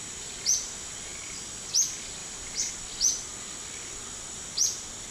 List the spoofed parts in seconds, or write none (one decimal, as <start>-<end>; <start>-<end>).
2.2-2.7